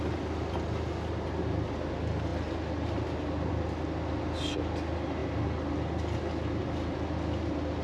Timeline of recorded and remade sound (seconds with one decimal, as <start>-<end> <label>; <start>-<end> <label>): 0.0-7.8 recorded